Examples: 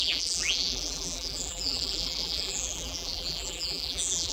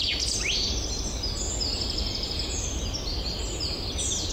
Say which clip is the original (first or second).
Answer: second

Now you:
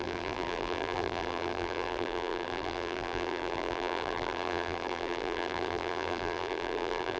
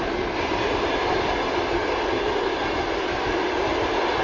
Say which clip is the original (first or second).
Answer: second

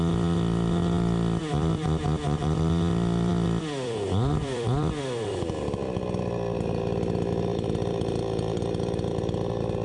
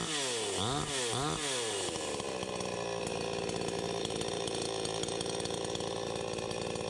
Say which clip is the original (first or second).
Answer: second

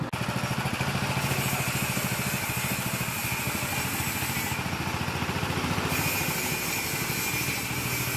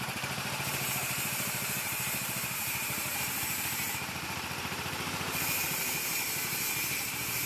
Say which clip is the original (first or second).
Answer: first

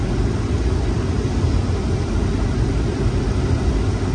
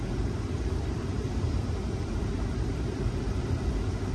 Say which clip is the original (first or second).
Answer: first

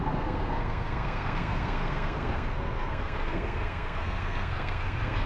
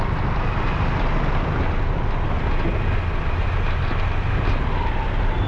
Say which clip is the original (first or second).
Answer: second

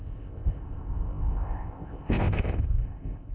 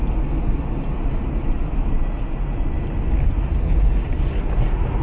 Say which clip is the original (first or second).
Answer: second